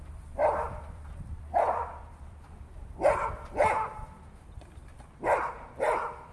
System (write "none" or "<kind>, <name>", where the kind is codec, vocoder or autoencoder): vocoder, BigVGAN v2